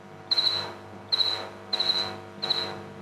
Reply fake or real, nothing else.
real